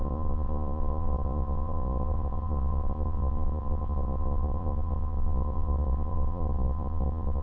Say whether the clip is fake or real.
fake